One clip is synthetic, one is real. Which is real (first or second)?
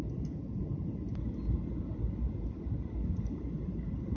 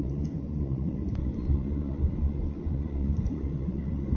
first